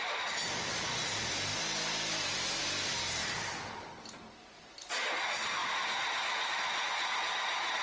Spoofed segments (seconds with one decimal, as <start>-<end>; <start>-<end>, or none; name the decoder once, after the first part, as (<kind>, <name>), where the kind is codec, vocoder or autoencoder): none